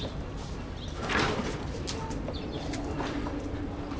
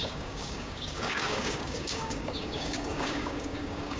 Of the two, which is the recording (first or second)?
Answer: first